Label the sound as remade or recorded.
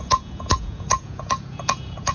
remade